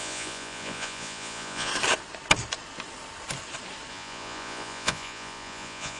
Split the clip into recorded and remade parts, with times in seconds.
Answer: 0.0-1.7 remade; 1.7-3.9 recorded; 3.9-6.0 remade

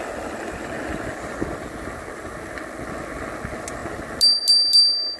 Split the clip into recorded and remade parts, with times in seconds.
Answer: 0.0-5.2 recorded

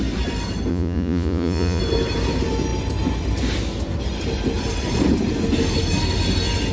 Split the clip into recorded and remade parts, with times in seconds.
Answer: 0.0-0.7 recorded; 0.7-1.8 remade; 1.8-6.7 recorded

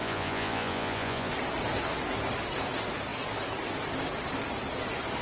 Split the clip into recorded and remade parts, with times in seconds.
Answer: 0.0-1.3 remade; 1.3-5.2 recorded